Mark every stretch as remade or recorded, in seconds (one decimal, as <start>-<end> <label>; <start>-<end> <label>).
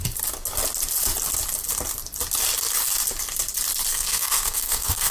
0.0-3.9 recorded; 3.9-5.1 remade